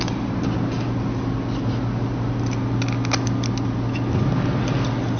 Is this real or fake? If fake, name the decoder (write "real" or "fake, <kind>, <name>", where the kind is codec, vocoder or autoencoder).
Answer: real